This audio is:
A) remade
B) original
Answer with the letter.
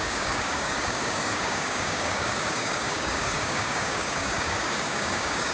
A